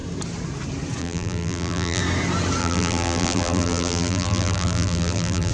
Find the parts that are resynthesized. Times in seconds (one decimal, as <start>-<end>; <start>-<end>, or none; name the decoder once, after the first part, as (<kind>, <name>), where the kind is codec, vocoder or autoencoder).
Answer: 1.0-2.0 (vocoder, BigVGAN v2); 2.6-5.5